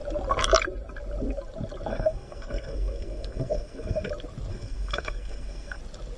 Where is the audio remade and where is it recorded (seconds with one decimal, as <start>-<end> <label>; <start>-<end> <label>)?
0.0-1.9 recorded; 1.9-4.1 remade; 4.1-4.5 recorded; 4.5-5.8 remade; 5.8-6.2 recorded